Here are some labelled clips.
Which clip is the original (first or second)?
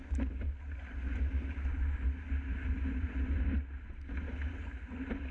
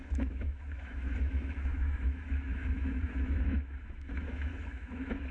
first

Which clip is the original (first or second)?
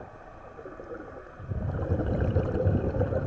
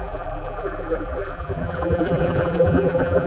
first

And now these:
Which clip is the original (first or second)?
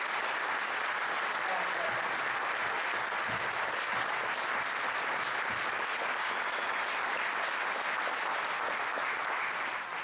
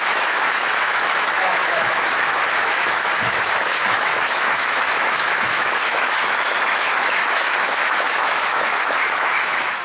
first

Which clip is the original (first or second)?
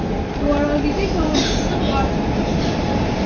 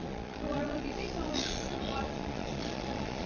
first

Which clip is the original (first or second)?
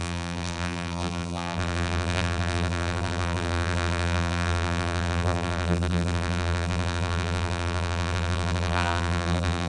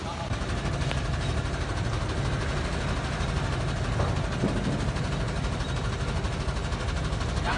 second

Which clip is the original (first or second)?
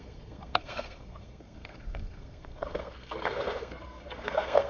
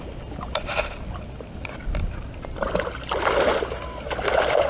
second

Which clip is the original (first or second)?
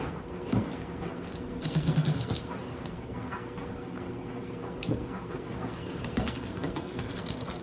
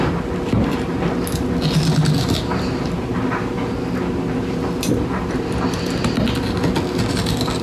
second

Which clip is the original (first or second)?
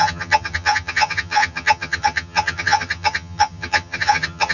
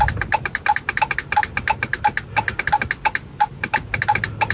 second